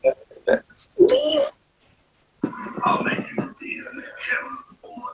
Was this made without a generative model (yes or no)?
yes